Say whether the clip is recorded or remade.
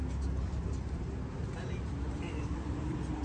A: remade